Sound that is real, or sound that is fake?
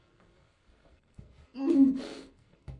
fake